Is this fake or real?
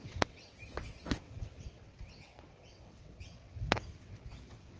fake